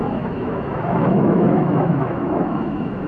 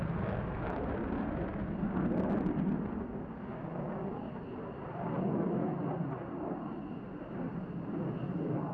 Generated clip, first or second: first